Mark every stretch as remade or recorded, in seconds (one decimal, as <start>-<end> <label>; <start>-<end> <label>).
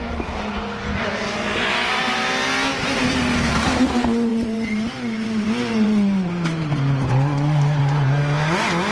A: 0.0-2.7 recorded; 2.7-3.5 remade; 3.5-4.3 recorded; 4.3-7.8 remade; 7.8-8.9 recorded